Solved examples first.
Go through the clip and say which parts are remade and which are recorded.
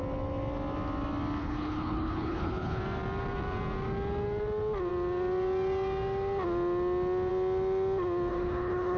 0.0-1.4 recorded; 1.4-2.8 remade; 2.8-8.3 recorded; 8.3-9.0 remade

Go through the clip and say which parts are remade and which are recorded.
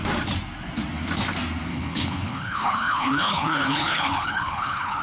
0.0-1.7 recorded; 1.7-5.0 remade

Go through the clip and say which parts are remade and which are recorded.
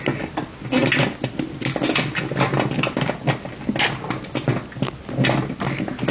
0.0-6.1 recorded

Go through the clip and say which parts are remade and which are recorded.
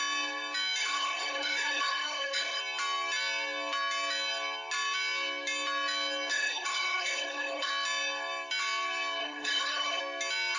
0.0-0.8 recorded; 0.8-2.6 remade; 2.6-6.3 recorded; 6.3-7.7 remade; 7.7-9.2 recorded; 9.2-10.0 remade; 10.0-10.6 recorded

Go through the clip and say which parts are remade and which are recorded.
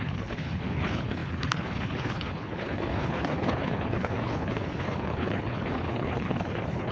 0.0-6.9 remade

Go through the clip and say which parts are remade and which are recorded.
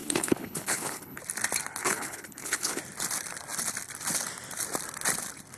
0.0-1.2 remade; 1.2-1.8 recorded; 1.8-2.8 remade; 2.8-5.6 recorded